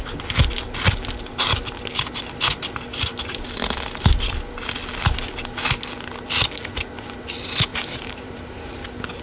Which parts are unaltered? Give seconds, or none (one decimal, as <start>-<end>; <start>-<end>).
0.0-7.7; 8.7-9.2